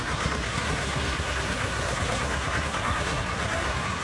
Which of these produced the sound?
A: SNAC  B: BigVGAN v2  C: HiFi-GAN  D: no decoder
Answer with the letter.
A